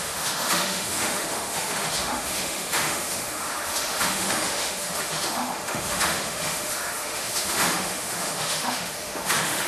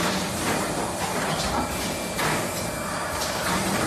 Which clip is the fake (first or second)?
first